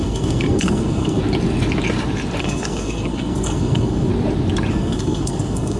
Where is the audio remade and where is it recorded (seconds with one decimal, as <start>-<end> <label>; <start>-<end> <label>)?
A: 0.0-1.2 remade; 1.2-2.4 recorded; 2.4-4.1 remade; 4.1-4.7 recorded; 4.7-5.8 remade